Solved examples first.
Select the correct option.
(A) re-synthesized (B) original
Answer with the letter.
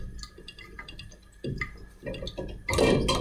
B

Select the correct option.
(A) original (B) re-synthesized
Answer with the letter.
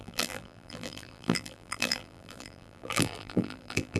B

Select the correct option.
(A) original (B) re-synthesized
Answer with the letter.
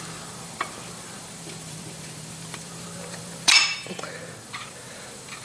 B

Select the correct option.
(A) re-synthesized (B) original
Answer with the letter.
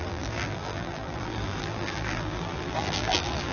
A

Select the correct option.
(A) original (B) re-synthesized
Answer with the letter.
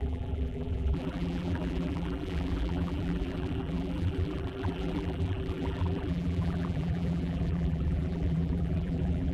B